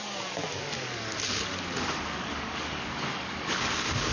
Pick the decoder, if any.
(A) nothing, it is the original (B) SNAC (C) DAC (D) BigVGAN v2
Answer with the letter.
C